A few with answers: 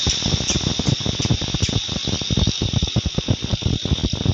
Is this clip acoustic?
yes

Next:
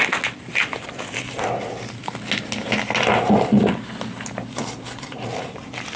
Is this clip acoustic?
yes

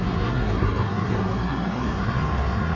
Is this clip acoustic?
no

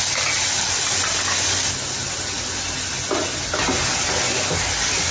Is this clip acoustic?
yes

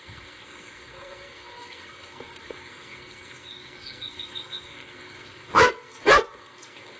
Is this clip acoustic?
no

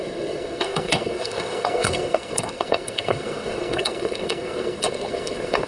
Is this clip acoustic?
no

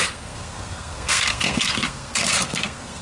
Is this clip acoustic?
no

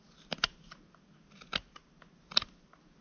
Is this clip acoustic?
yes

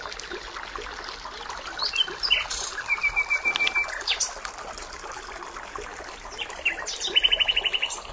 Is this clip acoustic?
yes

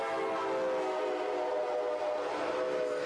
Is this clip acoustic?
yes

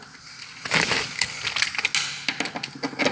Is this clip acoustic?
yes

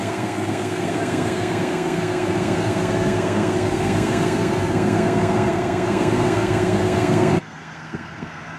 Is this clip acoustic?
no